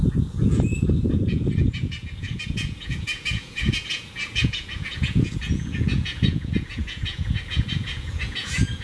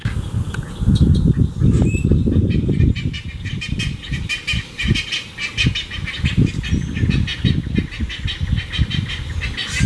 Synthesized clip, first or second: first